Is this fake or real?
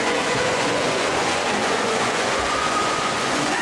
fake